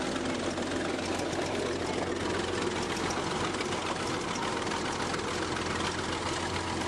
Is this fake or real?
real